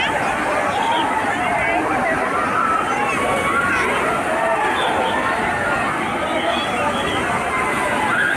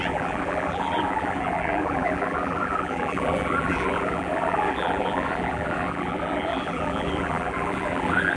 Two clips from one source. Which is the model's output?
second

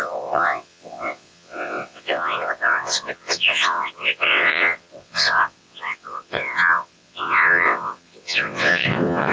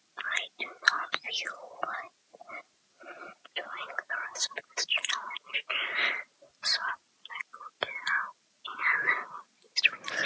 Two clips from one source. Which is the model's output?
first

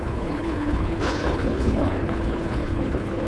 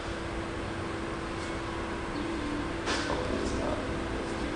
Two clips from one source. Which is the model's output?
first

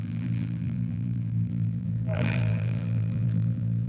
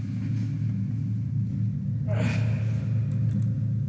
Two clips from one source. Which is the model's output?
first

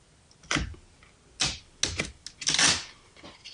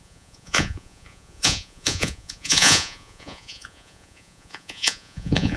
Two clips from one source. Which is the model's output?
second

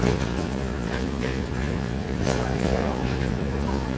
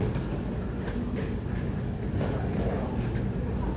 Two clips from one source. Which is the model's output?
first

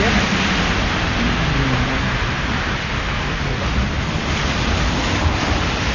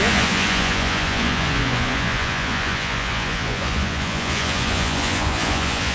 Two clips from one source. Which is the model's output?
second